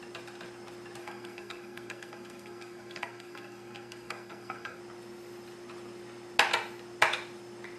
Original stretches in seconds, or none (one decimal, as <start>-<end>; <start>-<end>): 0.0-1.0; 4.8-7.8